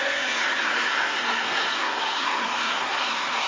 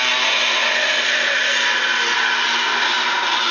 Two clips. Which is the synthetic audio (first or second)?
first